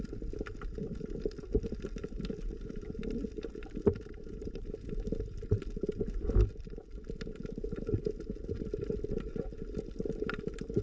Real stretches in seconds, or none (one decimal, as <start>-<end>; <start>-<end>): 0.0-3.9; 4.8-10.8